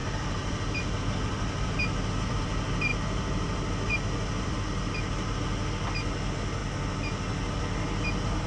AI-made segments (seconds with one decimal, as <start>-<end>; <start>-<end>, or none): 0.0-2.4; 2.9-5.0